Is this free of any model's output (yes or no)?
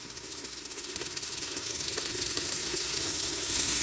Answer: no